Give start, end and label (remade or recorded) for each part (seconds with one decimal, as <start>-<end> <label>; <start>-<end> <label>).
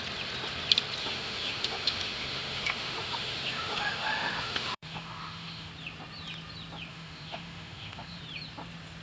0.0-1.0 recorded; 1.0-5.7 remade; 5.7-6.9 recorded; 6.9-8.2 remade; 8.2-9.0 recorded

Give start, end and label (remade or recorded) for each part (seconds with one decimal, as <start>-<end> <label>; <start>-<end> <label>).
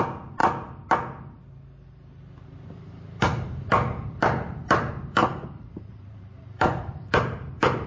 0.0-0.4 remade; 0.4-2.7 recorded; 2.7-7.9 remade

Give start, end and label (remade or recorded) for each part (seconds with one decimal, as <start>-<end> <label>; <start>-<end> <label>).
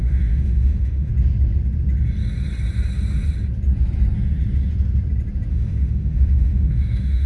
0.0-1.1 remade; 1.1-5.5 recorded; 5.5-7.3 remade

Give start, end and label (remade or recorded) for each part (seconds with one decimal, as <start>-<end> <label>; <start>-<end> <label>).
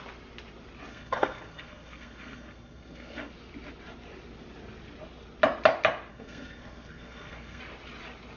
0.0-0.9 recorded; 0.9-3.3 remade; 3.3-6.1 recorded; 6.1-7.6 remade; 7.6-8.4 recorded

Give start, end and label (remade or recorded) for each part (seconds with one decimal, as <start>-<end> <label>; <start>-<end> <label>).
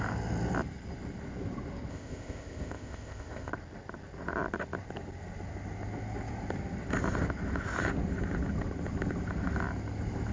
0.0-1.9 recorded; 1.9-3.5 remade; 3.5-10.3 recorded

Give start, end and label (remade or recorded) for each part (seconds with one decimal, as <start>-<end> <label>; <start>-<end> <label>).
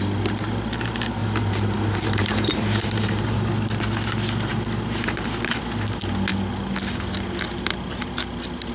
0.0-1.2 recorded; 1.2-3.5 remade; 3.5-8.7 recorded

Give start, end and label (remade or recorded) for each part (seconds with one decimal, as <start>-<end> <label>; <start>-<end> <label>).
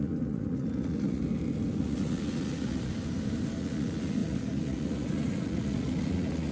0.0-1.2 remade; 1.2-1.8 recorded; 1.8-2.9 remade; 2.9-3.6 recorded; 3.6-6.5 remade